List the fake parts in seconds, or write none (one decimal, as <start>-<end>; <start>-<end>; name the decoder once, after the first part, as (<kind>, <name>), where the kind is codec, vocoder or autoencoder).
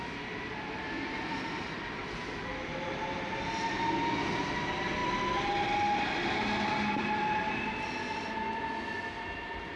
5.0-7.7 (vocoder, BigVGAN v2)